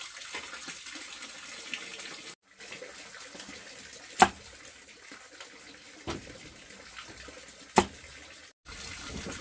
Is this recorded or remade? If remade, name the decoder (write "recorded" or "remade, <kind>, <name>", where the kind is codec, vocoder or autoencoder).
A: recorded